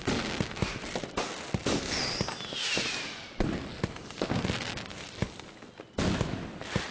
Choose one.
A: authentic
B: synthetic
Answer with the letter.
A